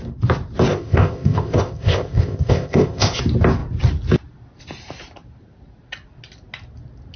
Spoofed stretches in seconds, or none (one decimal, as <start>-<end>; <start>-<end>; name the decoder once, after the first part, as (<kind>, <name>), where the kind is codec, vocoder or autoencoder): 0.7-3.2 (codec, ZipCodec)